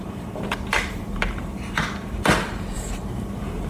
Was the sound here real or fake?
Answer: fake